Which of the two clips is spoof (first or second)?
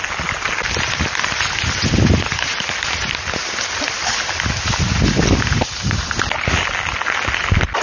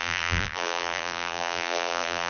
second